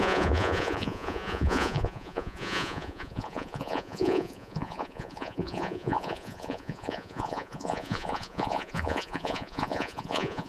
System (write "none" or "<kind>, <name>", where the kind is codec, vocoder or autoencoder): vocoder, Vocos